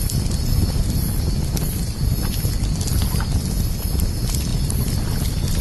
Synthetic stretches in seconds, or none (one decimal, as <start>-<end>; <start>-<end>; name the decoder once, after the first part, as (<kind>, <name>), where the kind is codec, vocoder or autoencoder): none